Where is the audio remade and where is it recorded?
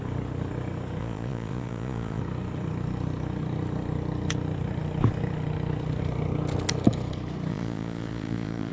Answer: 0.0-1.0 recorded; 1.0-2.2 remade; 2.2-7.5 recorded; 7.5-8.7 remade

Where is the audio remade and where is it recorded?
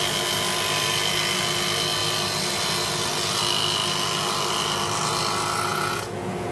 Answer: 0.0-5.7 recorded; 5.7-6.5 remade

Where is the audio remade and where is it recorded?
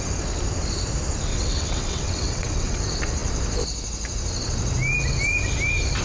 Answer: 0.0-1.3 recorded; 1.3-2.8 remade; 2.8-6.0 recorded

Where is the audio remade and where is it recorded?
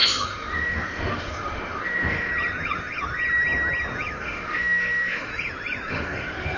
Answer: 0.0-2.3 remade; 2.3-4.2 recorded; 4.2-5.3 remade; 5.3-5.9 recorded; 5.9-6.6 remade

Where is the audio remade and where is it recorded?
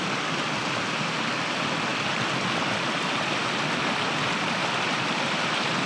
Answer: 0.0-5.9 recorded